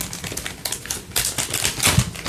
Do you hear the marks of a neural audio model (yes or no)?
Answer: no